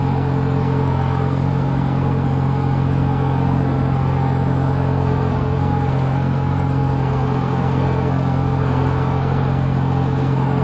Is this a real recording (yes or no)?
no